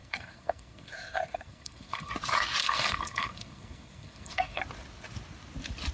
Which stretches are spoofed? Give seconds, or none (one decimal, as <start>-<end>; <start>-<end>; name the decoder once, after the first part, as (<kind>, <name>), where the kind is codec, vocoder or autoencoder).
0.0-2.1 (codec, SNAC); 2.6-4.6